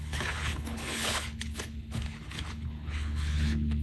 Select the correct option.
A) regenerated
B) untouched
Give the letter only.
A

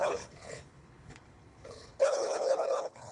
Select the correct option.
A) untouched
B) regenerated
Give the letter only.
B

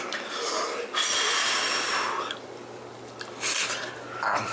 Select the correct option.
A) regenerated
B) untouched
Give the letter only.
B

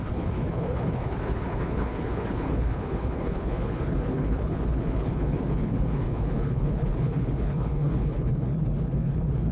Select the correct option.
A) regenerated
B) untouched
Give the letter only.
A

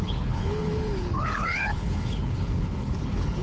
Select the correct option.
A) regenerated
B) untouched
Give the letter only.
A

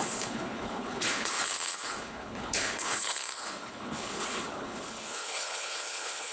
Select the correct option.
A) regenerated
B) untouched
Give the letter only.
A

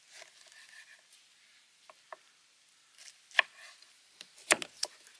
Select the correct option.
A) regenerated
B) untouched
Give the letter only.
B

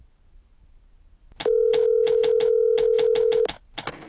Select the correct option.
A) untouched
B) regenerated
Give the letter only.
A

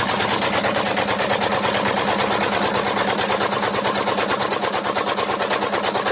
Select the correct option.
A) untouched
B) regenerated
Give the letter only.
A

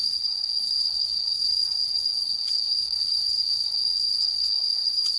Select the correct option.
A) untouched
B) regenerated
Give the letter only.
B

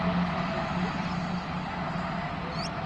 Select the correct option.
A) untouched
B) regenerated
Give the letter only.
A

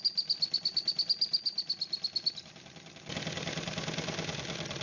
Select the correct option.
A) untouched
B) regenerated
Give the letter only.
A